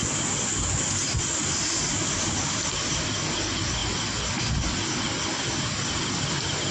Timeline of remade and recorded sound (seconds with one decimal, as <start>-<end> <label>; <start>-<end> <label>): 0.0-6.7 recorded